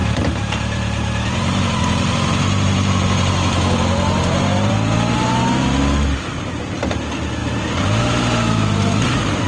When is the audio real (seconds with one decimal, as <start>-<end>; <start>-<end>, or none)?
4.7-7.4; 8.0-9.5